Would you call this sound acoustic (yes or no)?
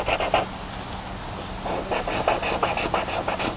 yes